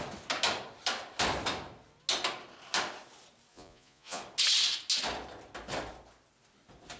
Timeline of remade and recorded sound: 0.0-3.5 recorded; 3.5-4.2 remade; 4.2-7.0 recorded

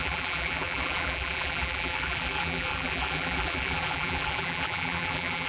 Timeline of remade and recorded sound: 0.0-5.5 remade